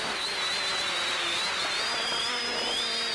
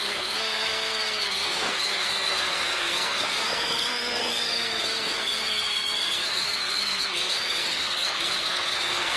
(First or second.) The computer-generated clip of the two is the second